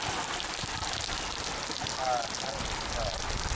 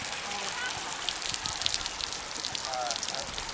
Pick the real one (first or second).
first